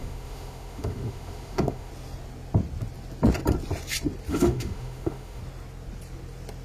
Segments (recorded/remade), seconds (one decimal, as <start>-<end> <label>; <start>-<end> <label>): 0.0-1.9 remade; 1.9-4.3 recorded; 4.3-5.4 remade; 5.4-6.6 recorded